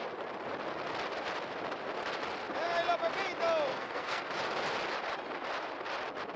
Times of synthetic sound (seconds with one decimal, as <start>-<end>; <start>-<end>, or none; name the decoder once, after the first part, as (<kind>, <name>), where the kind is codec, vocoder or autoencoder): 3.7-4.3 (codec, SNAC)